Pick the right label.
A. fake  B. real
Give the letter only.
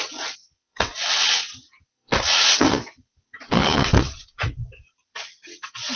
A